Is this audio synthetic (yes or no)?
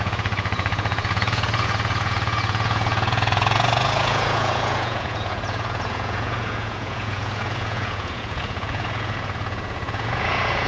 yes